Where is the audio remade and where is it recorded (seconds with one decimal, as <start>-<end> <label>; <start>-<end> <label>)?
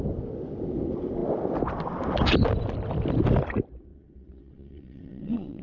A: 0.0-3.9 recorded; 3.9-5.6 remade